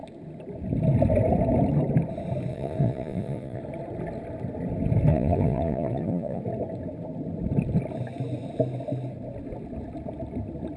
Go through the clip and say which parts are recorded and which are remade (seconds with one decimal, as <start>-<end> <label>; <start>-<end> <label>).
0.0-2.5 recorded; 2.5-3.6 remade; 3.6-5.1 recorded; 5.1-6.4 remade; 6.4-10.8 recorded